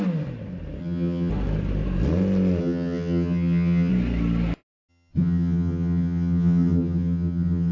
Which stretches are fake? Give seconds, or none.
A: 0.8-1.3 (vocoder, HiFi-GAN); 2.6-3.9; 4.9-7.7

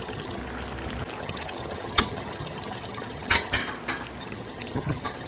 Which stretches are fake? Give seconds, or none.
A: 0.0-0.4 (vocoder, HiFi-GAN); 1.2-3.6; 4.2-5.3

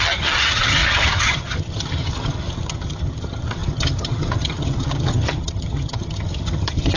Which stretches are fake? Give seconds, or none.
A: 0.0-7.0 (vocoder, HiFi-GAN)

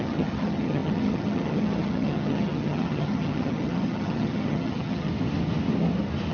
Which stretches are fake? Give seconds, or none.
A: 0.0-5.1 (vocoder, HiFi-GAN)